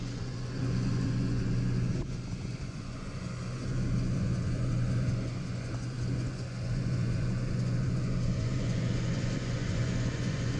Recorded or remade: remade